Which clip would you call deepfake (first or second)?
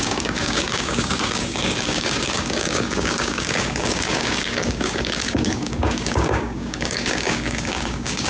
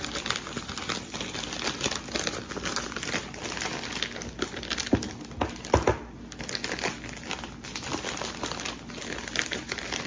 first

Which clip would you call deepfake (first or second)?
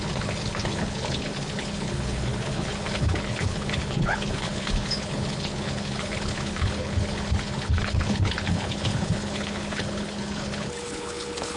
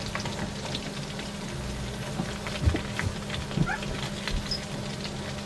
first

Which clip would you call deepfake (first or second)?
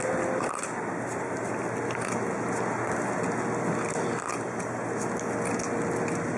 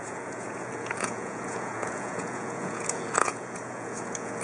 second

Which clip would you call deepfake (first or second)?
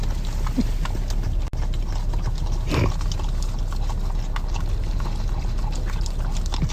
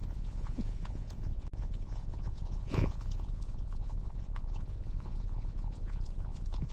second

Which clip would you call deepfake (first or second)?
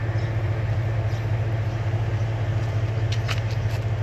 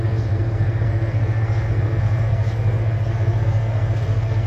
second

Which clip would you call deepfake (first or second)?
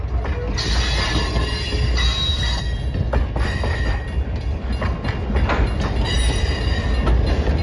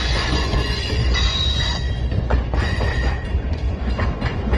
second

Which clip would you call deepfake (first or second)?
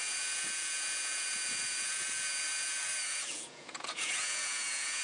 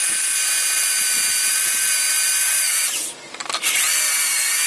first